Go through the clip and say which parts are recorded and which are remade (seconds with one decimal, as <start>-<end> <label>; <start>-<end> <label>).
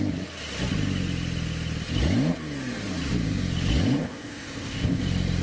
0.0-4.0 recorded; 4.0-5.0 remade; 5.0-5.4 recorded